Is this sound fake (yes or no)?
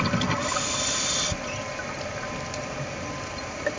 no